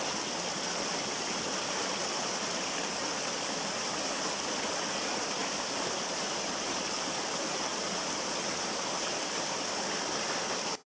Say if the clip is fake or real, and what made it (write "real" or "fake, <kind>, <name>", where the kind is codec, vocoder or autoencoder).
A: fake, vocoder, BigVGAN v2